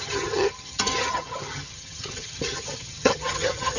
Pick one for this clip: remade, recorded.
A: remade